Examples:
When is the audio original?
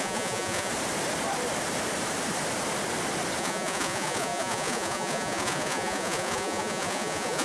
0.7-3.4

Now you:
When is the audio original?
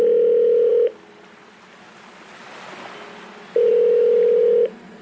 0.0-5.0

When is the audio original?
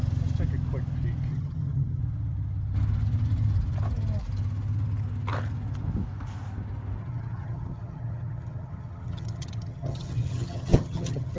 0.0-1.3; 2.0-7.0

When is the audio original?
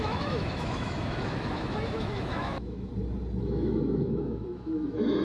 2.9-3.4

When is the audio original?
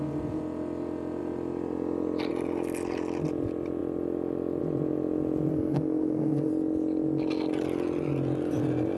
0.0-5.5; 6.5-9.0